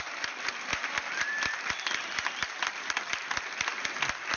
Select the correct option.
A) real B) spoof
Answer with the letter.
B